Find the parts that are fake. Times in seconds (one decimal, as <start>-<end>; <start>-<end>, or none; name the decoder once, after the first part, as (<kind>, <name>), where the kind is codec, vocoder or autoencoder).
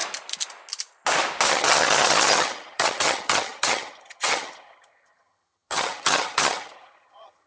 1.5-7.5 (vocoder, HiFi-GAN)